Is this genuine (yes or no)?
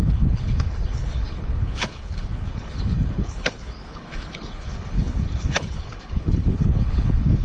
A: no